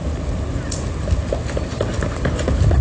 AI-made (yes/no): no